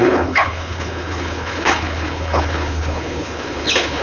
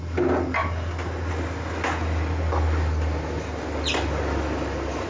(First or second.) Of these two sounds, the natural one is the second